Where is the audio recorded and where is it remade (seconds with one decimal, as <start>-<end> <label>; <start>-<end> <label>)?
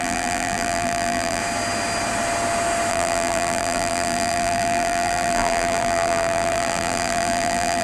0.0-1.4 remade; 1.4-2.9 recorded; 2.9-7.8 remade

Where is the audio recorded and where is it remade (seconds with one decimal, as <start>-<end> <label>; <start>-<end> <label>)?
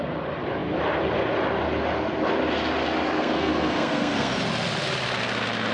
0.0-3.2 recorded; 3.2-4.3 remade; 4.3-5.7 recorded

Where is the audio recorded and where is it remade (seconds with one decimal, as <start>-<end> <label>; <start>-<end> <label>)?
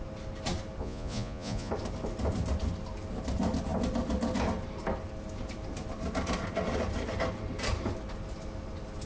0.0-0.8 recorded; 0.8-1.7 remade; 1.7-9.1 recorded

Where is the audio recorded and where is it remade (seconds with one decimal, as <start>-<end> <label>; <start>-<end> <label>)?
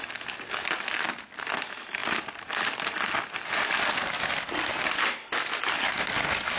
0.0-6.6 recorded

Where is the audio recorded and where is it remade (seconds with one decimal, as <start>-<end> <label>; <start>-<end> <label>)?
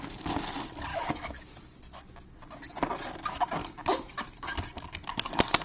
0.0-0.9 recorded; 0.9-1.8 remade; 1.8-3.6 recorded; 3.6-4.5 remade; 4.5-5.6 recorded